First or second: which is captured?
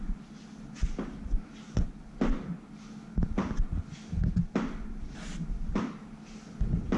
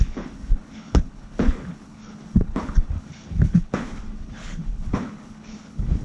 first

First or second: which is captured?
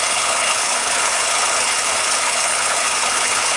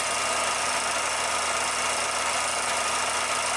second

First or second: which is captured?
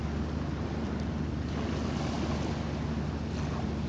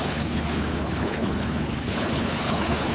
first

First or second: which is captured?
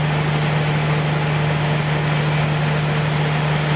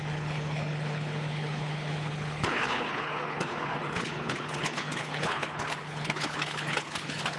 first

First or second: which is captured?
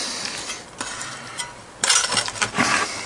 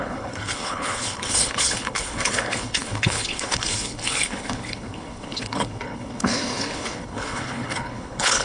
first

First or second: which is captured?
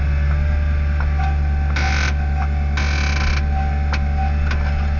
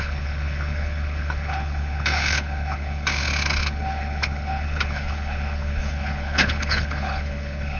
first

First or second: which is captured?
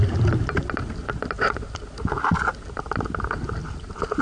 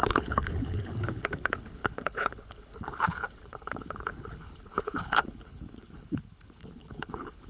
first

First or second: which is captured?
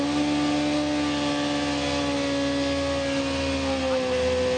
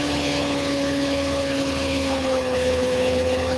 first